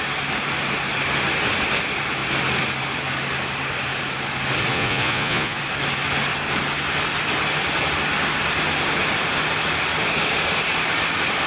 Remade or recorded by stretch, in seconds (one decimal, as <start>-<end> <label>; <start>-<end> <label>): 0.0-4.7 recorded; 4.7-5.6 remade; 5.6-11.5 recorded